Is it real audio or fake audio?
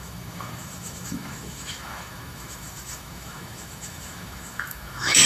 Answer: fake